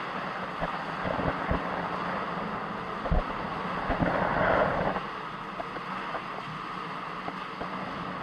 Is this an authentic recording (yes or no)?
yes